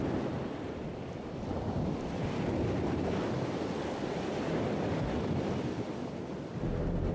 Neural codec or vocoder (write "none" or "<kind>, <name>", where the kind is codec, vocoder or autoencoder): none